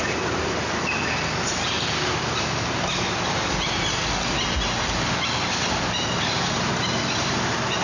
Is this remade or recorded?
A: recorded